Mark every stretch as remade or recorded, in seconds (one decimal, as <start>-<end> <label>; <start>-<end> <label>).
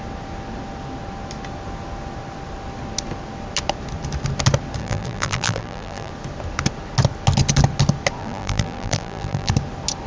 0.0-4.8 recorded; 4.8-6.1 remade; 6.1-8.2 recorded; 8.2-9.5 remade; 9.5-10.1 recorded